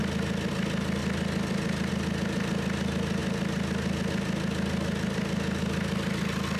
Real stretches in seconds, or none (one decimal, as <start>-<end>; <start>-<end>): 0.0-6.6